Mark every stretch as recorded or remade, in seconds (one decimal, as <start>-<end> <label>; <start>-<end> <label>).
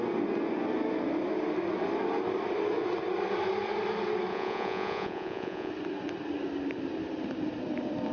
0.0-4.3 recorded; 4.3-5.7 remade; 5.7-8.1 recorded